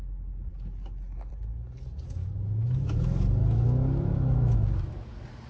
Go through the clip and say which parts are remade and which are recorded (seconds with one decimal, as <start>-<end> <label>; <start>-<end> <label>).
0.0-2.2 recorded; 2.2-5.1 remade; 5.1-5.5 recorded